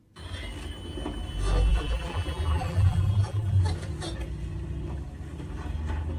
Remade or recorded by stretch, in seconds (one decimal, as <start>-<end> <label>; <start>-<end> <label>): 0.0-1.7 recorded; 1.7-3.6 remade; 3.6-6.2 recorded